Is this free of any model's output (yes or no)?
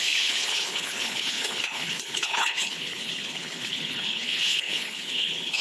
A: no